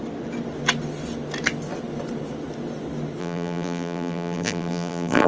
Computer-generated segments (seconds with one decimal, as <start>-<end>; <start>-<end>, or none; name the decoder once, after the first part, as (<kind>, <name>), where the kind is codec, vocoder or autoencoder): 3.2-5.3 (vocoder, BigVGAN v2)